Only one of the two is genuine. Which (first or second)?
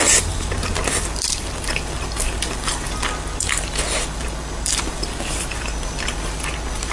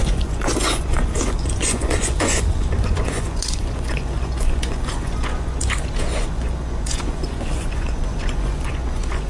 first